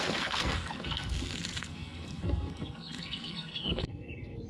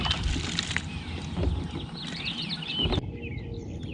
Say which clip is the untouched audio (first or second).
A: second